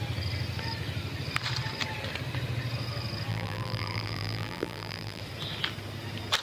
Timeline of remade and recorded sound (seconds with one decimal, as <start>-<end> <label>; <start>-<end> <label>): 0.0-3.3 recorded; 3.3-5.2 remade; 5.2-6.4 recorded